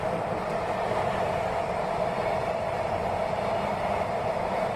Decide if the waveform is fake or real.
real